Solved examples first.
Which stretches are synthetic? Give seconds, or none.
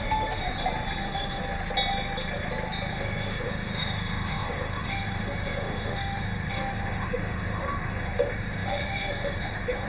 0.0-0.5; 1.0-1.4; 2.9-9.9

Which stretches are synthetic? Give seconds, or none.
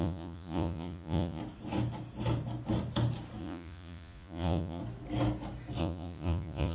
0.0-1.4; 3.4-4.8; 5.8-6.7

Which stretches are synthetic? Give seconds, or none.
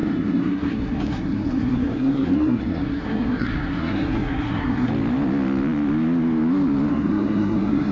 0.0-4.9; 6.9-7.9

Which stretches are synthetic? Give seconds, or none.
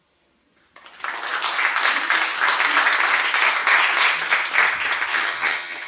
5.1-5.9